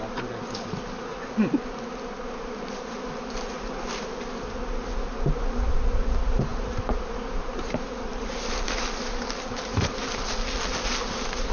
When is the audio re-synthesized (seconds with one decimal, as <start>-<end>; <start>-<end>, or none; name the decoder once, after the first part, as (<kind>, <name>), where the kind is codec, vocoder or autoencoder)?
none